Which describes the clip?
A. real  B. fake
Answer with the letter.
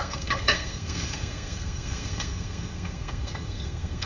B